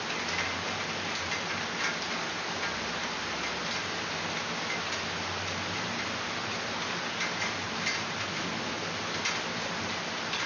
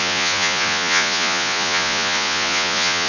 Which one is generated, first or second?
second